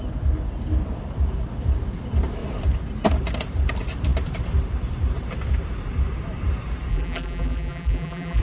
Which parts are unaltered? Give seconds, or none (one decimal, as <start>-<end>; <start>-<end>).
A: 0.0-6.9

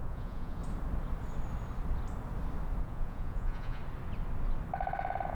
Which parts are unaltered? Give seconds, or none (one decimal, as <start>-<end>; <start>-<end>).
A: 0.6-2.8; 3.8-5.3

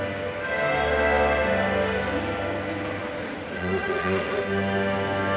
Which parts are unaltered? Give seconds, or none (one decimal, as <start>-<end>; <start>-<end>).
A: 0.0-3.2; 4.4-5.4

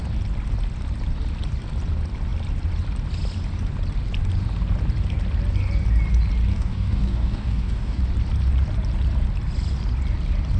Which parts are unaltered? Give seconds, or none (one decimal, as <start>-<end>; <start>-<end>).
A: 0.0-6.5; 8.0-10.6

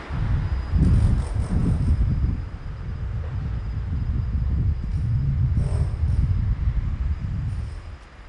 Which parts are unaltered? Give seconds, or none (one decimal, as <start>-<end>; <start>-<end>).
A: 0.0-8.3

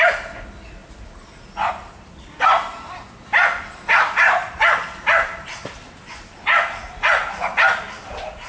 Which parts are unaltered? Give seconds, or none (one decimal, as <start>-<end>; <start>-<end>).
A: 0.0-8.5